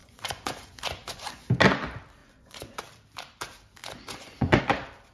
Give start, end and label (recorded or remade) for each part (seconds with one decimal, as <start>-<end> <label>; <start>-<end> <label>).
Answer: 0.0-1.5 remade; 1.5-2.2 recorded; 2.2-2.8 remade; 2.8-3.8 recorded; 3.8-4.6 remade; 4.6-5.1 recorded